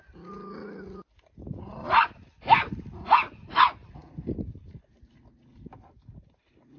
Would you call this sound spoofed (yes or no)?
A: no